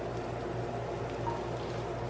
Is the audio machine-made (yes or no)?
no